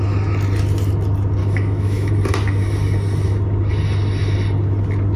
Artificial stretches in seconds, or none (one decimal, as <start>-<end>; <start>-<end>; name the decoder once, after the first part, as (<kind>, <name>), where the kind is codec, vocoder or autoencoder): 1.4-2.1 (autoencoder, DAC-VAE)